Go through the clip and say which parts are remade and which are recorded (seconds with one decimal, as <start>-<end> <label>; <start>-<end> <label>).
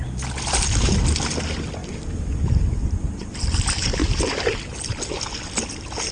0.0-4.0 recorded; 4.0-4.8 remade; 4.8-6.1 recorded